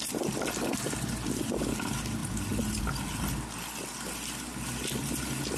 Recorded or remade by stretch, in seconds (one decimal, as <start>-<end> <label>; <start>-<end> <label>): 0.0-5.6 recorded